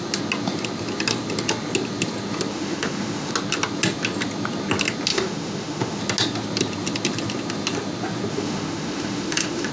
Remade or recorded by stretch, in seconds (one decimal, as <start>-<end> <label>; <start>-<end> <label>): 0.0-2.5 recorded; 2.5-3.3 remade; 3.3-5.1 recorded; 5.1-6.0 remade; 6.0-8.3 recorded; 8.3-9.7 remade